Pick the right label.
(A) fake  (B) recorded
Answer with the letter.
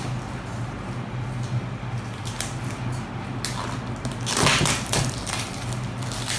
B